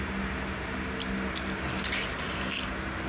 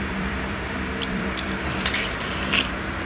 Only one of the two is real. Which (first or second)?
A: first